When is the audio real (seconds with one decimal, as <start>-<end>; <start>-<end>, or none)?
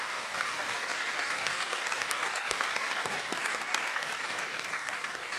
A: none